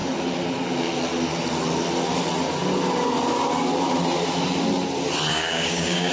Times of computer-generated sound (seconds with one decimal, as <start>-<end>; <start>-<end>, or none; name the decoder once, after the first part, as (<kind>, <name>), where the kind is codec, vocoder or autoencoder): 5.3-6.1 (codec, DAC)